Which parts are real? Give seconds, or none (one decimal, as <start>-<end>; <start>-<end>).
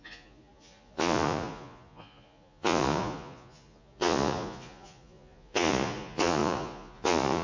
none